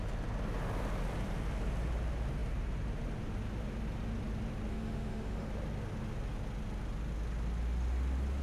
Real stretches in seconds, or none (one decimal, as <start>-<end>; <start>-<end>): 0.0-4.7; 5.5-8.4